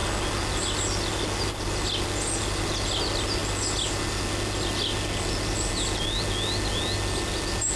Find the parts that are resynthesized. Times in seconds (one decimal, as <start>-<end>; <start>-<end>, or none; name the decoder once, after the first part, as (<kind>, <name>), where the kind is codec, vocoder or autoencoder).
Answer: none